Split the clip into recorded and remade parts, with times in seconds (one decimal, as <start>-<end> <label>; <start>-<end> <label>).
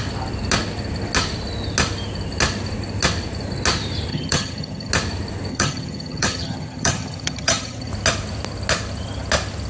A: 0.0-4.1 recorded; 4.1-4.9 remade; 4.9-5.5 recorded; 5.5-7.9 remade; 7.9-9.7 recorded